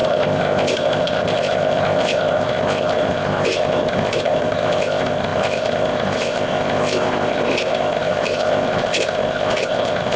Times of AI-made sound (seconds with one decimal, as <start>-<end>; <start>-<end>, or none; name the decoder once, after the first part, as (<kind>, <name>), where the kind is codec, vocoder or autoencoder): 0.0-10.2 (codec, ZipCodec)